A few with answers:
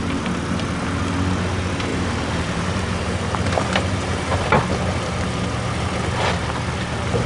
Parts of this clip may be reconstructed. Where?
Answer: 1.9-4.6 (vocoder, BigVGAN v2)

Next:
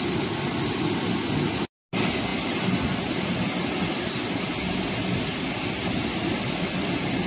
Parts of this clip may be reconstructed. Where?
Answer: none

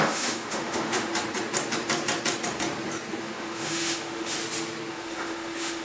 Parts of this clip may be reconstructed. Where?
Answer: 0.0-1.1 (autoencoder, DAC-VAE); 3.2-4.4; 4.9-5.8